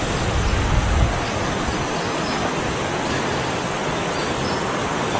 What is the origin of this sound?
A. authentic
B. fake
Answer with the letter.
A